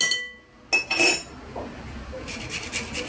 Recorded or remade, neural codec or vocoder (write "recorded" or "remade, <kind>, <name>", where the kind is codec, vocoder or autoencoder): recorded